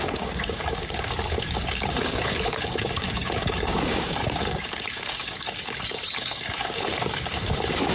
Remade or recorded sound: remade